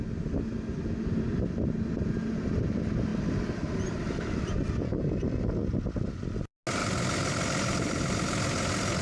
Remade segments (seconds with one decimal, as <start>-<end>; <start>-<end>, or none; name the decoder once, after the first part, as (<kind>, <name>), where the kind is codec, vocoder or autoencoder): 6.8-8.0 (vocoder, BigVGAN v2)